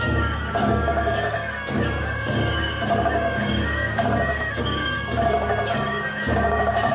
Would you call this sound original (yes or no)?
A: no